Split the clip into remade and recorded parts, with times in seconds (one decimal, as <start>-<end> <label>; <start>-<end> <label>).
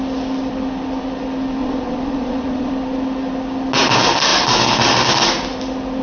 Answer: 0.0-1.6 recorded; 1.6-2.7 remade; 2.7-6.0 recorded